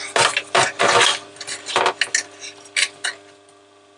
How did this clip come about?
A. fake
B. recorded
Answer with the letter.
B